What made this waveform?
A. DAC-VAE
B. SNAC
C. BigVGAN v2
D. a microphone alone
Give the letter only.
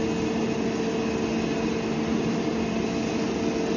D